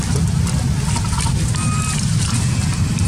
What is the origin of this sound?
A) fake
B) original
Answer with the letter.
B